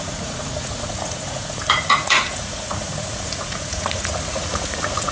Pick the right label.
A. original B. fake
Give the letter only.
B